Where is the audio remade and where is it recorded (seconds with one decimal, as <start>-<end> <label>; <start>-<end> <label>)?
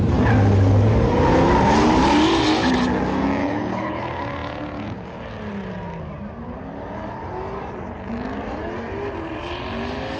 0.0-3.4 recorded; 3.4-4.0 remade; 4.0-10.2 recorded